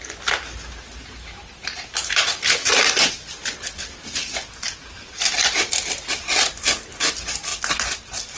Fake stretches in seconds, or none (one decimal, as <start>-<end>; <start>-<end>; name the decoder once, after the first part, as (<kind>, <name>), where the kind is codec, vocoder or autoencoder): none